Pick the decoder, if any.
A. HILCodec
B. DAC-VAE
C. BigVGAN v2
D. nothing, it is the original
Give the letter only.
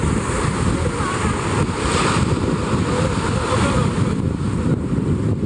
D